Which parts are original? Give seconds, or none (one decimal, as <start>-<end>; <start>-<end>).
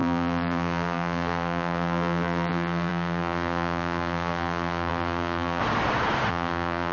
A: 5.6-6.3